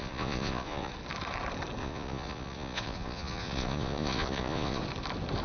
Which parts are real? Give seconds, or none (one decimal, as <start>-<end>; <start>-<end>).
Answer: 0.9-1.8; 4.8-5.4